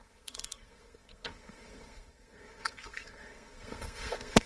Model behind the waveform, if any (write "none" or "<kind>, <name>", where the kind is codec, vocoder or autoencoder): codec, SNAC